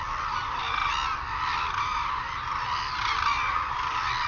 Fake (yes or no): no